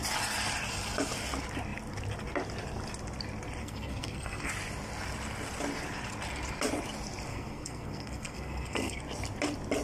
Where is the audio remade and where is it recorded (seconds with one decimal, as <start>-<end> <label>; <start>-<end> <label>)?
0.0-3.6 recorded; 3.6-4.5 remade; 4.5-7.3 recorded; 7.3-9.0 remade; 9.0-9.8 recorded